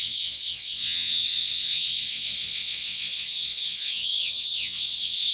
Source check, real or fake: fake